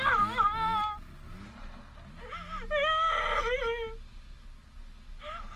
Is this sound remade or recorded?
recorded